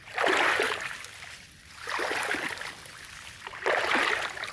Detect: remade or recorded recorded